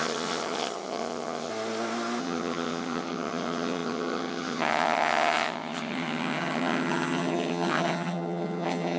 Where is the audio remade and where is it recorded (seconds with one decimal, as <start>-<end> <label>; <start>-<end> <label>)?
0.0-1.5 remade; 1.5-2.2 recorded; 2.2-9.0 remade